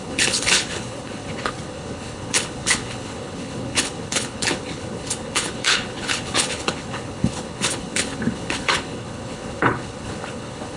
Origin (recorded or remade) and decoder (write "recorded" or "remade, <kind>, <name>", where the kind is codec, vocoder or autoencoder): remade, codec, HILCodec